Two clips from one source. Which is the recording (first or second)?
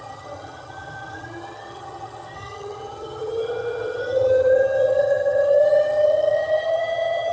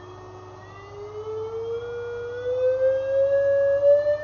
second